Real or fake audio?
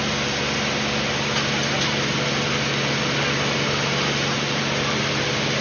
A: real